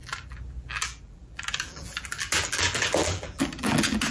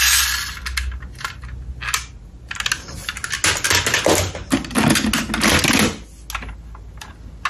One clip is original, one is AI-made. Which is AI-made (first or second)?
first